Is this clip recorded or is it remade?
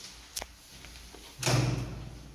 recorded